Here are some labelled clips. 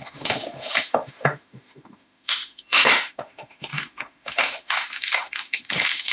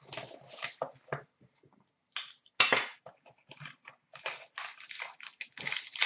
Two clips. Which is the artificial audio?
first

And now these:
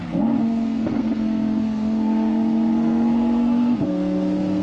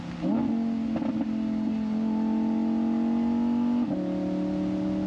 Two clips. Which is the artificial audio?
first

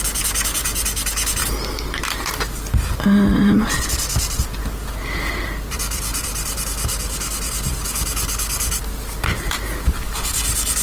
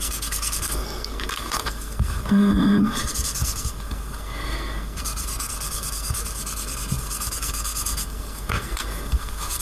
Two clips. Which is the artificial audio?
second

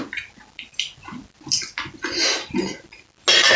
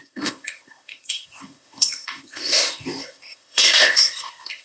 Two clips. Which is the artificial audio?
second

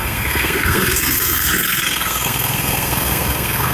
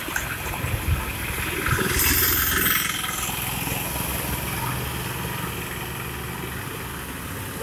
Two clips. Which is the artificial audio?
first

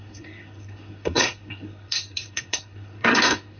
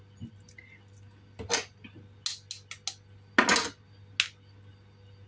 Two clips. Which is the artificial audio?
first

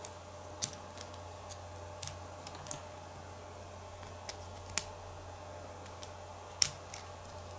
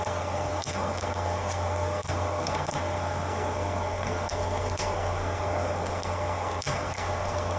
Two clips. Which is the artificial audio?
second